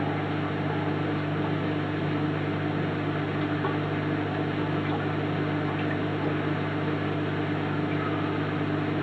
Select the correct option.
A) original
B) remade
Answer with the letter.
A